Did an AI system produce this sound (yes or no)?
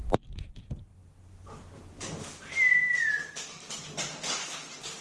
no